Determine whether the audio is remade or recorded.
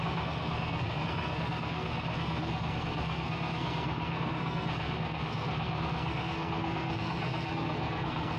remade